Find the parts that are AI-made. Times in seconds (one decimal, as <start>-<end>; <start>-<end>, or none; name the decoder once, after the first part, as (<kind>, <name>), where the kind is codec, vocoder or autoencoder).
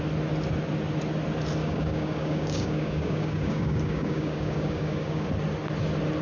1.6-5.3 (codec, DAC)